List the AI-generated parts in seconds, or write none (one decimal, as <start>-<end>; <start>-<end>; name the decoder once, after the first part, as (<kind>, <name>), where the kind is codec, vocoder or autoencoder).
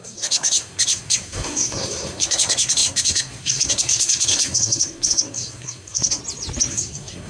0.0-6.2 (codec, SNAC); 6.7-7.3